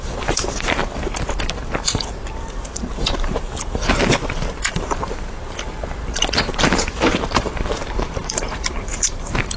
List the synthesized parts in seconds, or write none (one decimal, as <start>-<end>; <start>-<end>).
0.0-0.8; 2.3-3.5; 4.7-9.6